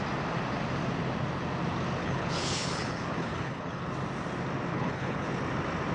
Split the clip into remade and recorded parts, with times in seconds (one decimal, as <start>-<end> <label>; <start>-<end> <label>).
0.0-2.0 recorded; 2.0-3.9 remade; 3.9-4.7 recorded; 4.7-5.3 remade; 5.3-5.9 recorded